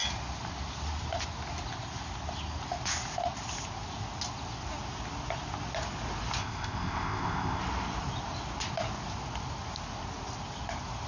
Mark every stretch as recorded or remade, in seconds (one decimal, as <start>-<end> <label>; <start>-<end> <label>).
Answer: 0.0-6.4 recorded; 6.4-7.6 remade; 7.6-11.1 recorded